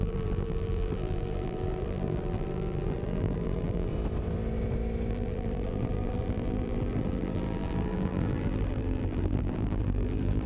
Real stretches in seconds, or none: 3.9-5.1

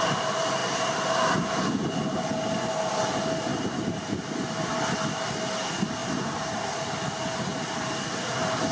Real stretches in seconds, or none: 0.0-3.5; 4.1-6.0; 6.6-8.7

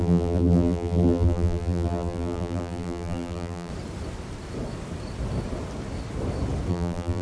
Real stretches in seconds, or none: 3.7-6.7

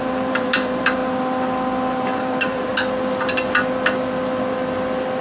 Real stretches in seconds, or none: 1.0-1.9; 2.7-5.2